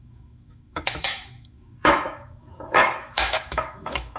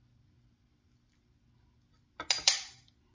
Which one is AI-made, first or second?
first